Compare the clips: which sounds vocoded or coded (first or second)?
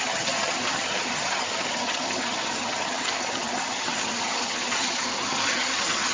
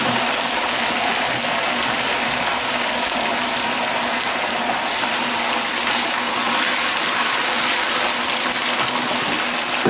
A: first